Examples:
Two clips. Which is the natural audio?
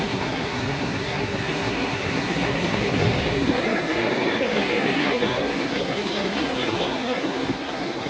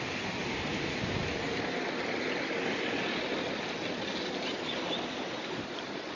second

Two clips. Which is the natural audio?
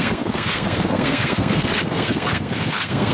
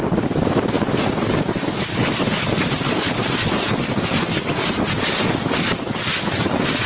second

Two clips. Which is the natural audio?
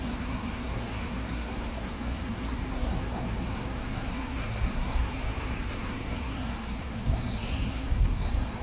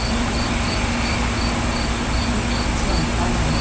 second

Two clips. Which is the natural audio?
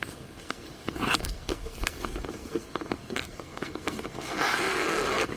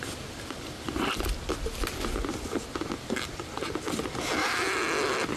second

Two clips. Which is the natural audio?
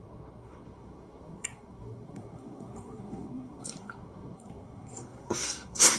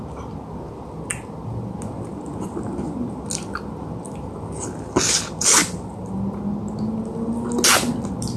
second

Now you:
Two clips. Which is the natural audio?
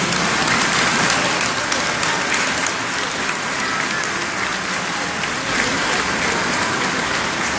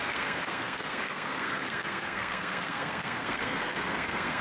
first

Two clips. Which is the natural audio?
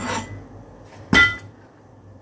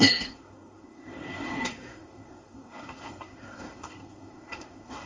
first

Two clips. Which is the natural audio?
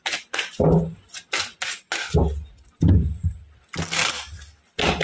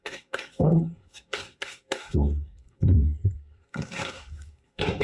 first